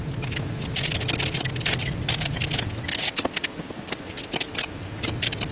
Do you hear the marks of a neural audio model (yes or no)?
no